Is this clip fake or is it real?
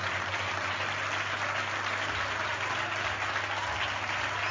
real